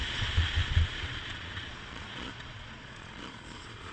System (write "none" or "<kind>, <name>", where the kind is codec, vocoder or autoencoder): vocoder, Vocos